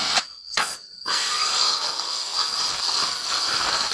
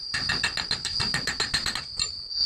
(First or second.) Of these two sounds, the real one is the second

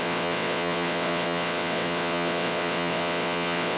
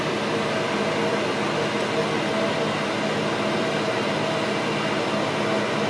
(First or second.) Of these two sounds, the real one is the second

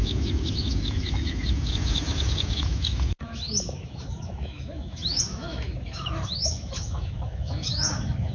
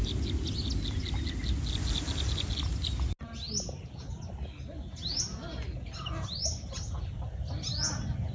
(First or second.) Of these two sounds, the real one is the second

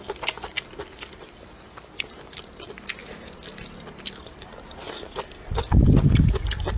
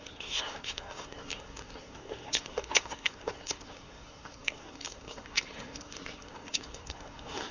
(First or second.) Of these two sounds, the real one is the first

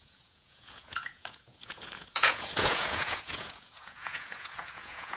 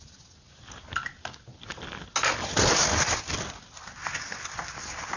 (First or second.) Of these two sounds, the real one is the second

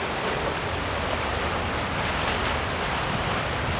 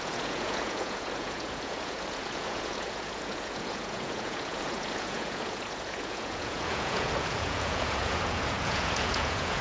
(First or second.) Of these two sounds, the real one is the first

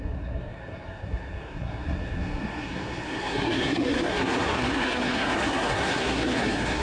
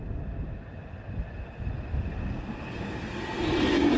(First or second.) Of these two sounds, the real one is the second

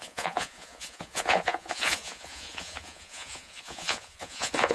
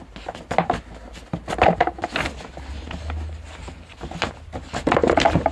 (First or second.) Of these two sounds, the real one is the second